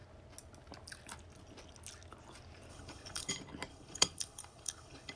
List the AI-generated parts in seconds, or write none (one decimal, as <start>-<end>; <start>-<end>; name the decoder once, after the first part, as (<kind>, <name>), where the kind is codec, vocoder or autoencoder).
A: 2.7-3.3 (codec, HILCodec); 3.7-5.2